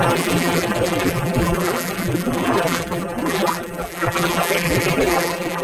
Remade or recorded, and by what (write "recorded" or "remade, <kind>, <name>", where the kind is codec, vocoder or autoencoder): remade, vocoder, BigVGAN v2